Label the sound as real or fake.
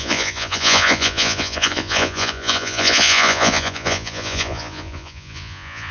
fake